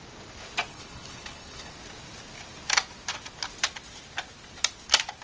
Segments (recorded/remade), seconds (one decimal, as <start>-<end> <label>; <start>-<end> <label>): 0.0-0.7 recorded; 0.7-1.7 remade; 1.7-5.2 recorded